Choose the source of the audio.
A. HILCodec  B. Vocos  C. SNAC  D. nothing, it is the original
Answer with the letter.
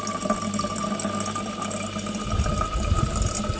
D